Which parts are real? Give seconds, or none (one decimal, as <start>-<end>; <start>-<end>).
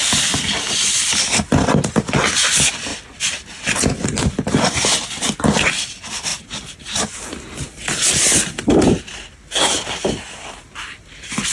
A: 0.0-11.5